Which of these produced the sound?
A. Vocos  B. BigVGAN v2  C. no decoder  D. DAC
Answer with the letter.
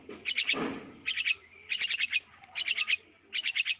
C